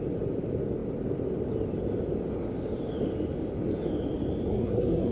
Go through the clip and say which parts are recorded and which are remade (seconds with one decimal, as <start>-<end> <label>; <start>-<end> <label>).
0.0-4.5 recorded; 4.5-5.1 remade